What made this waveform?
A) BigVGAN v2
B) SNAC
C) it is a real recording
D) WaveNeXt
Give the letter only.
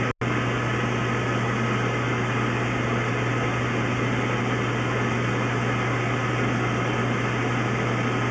C